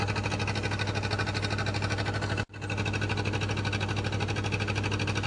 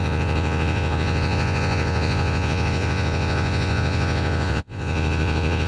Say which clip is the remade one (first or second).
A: second